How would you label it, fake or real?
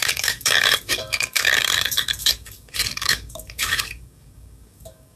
fake